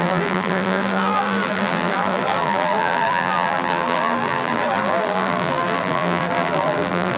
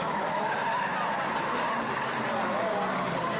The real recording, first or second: second